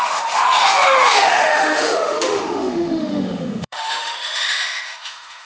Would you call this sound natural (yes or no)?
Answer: no